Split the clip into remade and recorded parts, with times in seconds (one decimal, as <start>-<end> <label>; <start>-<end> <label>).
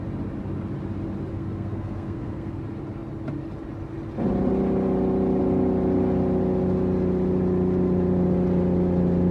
0.0-1.3 recorded; 1.3-2.6 remade; 2.6-9.3 recorded